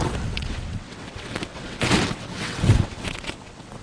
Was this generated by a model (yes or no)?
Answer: yes